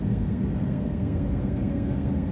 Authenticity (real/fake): fake